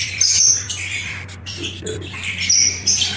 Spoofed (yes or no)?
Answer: yes